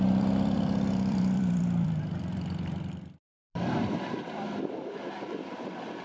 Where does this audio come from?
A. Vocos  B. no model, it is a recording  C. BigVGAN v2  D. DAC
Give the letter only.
C